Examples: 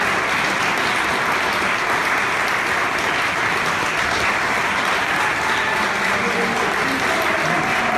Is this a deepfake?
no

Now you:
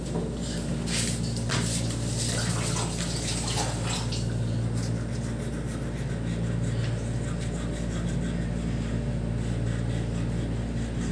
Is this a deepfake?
no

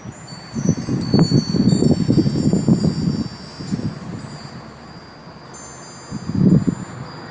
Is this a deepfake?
no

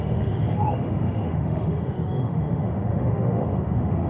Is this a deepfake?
yes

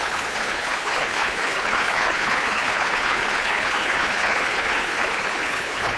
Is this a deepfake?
yes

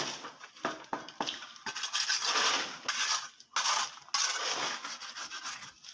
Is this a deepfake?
no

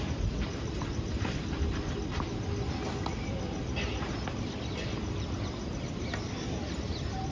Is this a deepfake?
no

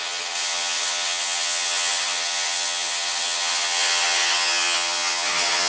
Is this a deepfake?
yes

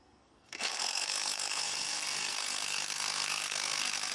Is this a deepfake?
yes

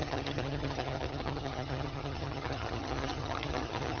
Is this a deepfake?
yes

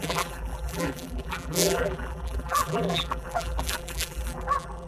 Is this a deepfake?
yes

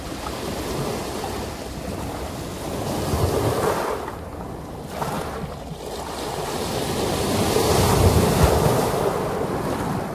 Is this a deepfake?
no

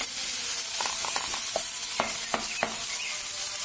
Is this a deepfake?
no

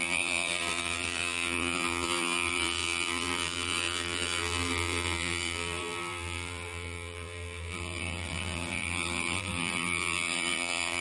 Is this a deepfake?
yes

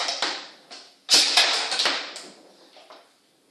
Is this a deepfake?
no